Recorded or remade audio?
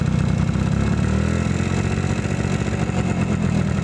recorded